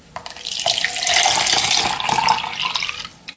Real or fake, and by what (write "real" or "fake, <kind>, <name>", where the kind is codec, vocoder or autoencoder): real